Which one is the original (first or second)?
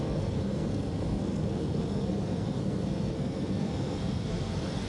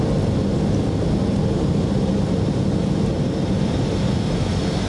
second